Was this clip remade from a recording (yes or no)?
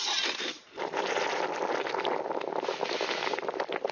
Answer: no